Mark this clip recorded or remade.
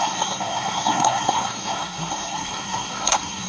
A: remade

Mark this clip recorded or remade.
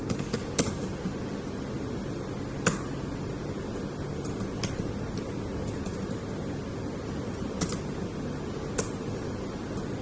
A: recorded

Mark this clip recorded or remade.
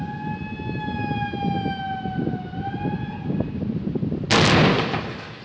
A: recorded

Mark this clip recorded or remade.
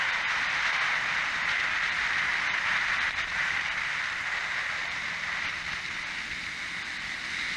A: recorded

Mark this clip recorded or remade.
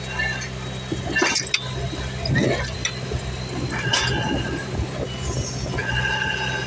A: recorded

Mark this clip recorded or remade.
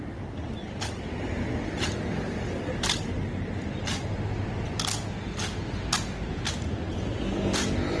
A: recorded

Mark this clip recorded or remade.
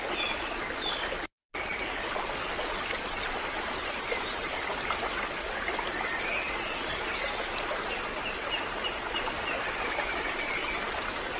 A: recorded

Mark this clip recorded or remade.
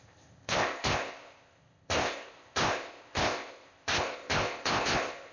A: remade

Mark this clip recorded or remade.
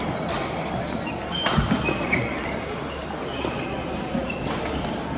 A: recorded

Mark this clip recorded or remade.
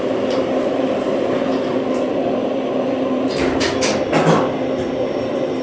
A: remade